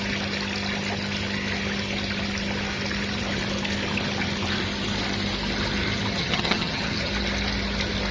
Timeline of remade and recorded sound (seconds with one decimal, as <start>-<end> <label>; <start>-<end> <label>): 0.0-6.2 recorded; 6.2-7.1 remade; 7.1-8.1 recorded